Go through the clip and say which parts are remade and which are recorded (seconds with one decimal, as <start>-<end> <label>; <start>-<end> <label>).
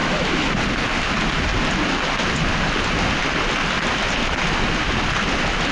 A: 0.0-0.5 remade; 0.5-5.7 recorded